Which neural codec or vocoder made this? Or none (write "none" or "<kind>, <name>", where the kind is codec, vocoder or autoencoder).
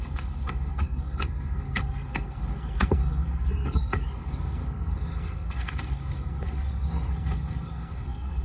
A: codec, SNAC